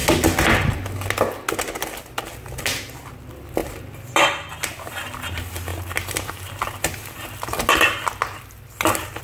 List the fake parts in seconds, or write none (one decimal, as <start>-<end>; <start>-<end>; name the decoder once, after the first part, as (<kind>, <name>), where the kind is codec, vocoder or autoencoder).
3.6-4.7 (vocoder, BigVGAN v2)

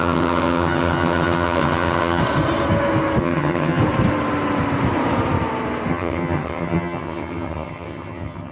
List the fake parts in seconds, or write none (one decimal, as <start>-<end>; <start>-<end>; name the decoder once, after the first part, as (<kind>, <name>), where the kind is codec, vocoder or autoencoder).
0.0-2.2 (vocoder, HiFi-GAN); 3.2-3.8; 5.9-8.5

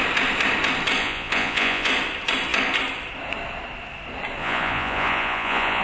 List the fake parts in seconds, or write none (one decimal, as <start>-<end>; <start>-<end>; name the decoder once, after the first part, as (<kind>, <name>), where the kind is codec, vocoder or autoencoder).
1.0-1.9 (vocoder, Vocos); 4.4-5.8